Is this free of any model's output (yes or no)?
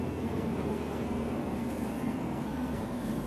no